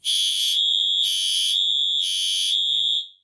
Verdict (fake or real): fake